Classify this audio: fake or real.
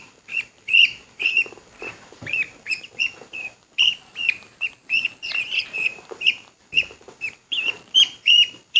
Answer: fake